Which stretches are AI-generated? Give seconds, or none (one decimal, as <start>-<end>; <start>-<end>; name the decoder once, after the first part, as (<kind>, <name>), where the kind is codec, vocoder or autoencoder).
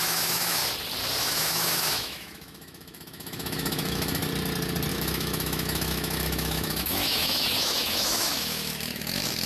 0.0-0.6 (autoencoder, DAC-VAE); 1.2-4.2; 4.9-9.5